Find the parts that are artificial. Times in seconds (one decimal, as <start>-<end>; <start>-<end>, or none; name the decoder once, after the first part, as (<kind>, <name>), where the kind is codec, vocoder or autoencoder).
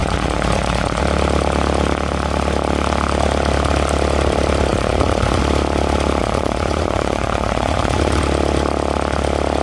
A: 0.0-1.0 (vocoder, Vocos); 4.7-5.4; 6.2-8.2